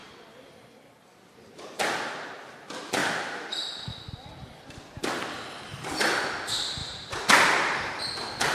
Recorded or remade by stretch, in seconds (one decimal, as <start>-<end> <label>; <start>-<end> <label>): 0.0-6.8 recorded; 6.8-8.0 remade; 8.0-8.5 recorded